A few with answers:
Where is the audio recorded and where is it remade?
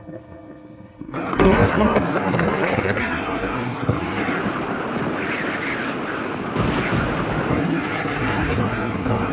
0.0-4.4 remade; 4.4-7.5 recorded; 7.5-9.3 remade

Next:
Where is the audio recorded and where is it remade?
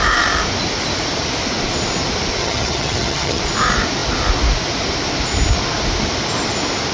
0.0-2.4 recorded; 2.4-3.4 remade; 3.4-6.9 recorded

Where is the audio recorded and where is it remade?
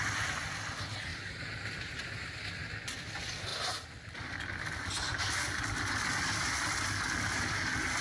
0.0-1.1 recorded; 1.1-2.2 remade; 2.2-2.6 recorded; 2.6-3.1 remade; 3.1-8.0 recorded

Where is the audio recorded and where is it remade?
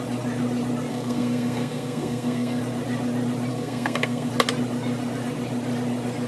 0.0-0.9 recorded; 0.9-2.6 remade; 2.6-3.5 recorded; 3.5-4.3 remade; 4.3-6.3 recorded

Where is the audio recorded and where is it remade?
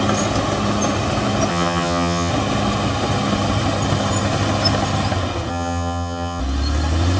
0.0-1.5 recorded; 1.5-2.3 remade; 2.3-5.5 recorded; 5.5-6.4 remade; 6.4-7.2 recorded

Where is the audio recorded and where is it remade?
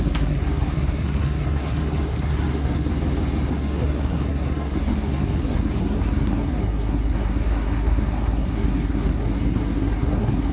0.0-2.9 remade; 2.9-3.5 recorded; 3.5-10.5 remade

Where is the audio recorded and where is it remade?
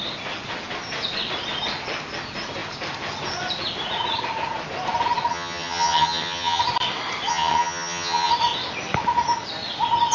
0.0-5.3 recorded; 5.3-6.6 remade; 6.6-7.3 recorded; 7.3-8.3 remade; 8.3-10.1 recorded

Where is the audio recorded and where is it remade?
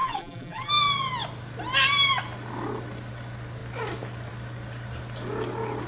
0.0-0.7 remade; 0.7-5.9 recorded